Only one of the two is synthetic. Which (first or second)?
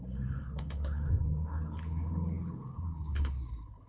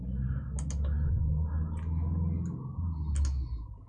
first